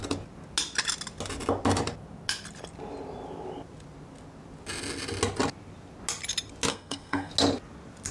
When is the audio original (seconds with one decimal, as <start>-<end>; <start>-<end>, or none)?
0.0-6.7; 7.3-8.1